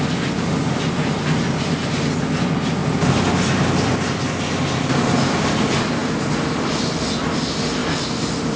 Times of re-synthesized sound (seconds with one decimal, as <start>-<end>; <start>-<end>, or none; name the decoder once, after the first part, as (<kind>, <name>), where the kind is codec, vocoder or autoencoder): none